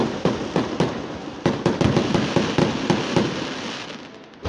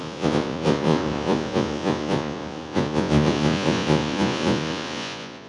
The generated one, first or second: second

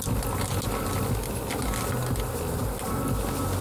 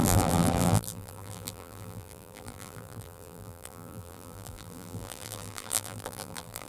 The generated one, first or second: second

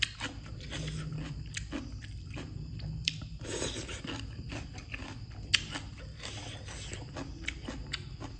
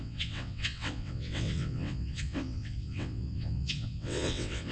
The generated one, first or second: second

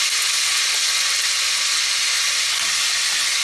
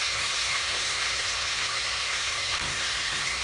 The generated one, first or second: second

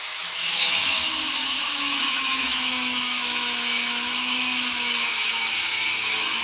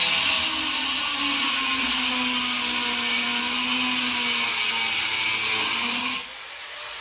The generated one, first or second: first